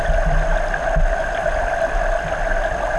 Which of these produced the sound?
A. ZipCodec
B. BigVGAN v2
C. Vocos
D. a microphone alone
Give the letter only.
D